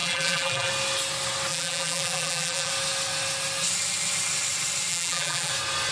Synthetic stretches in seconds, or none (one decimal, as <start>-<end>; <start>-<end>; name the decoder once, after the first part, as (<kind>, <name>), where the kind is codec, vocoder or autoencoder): 0.0-0.7 (vocoder, BigVGAN v2); 1.5-2.7; 4.9-5.5